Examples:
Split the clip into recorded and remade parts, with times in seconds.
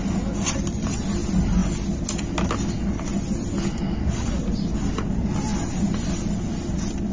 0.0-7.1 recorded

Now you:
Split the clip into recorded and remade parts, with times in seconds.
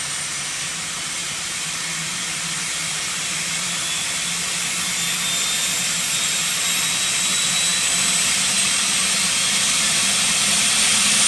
0.0-1.2 recorded; 1.2-4.6 remade; 4.6-9.7 recorded; 9.7-10.2 remade; 10.2-11.3 recorded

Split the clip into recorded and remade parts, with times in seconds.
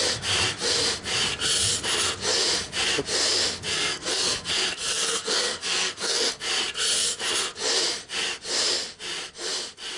0.0-3.7 recorded; 3.7-6.3 remade; 6.3-10.0 recorded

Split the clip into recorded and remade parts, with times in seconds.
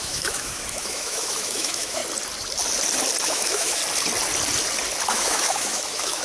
0.0-2.0 remade; 2.0-3.2 recorded; 3.2-3.8 remade; 3.8-5.1 recorded; 5.1-6.2 remade